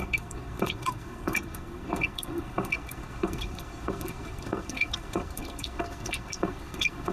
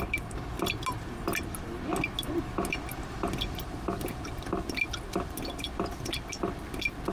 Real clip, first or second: second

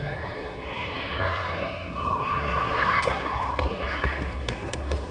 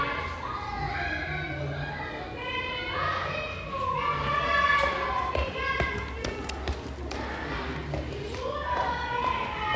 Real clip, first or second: second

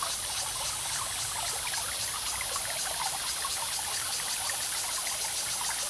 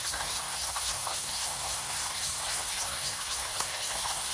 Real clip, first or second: first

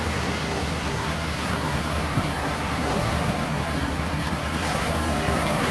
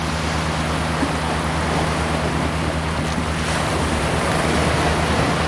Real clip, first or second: second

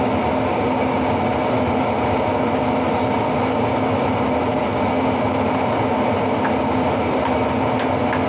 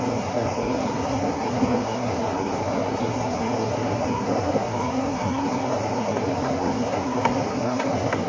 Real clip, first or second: first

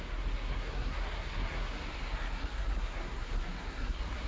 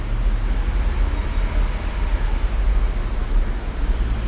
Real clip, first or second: second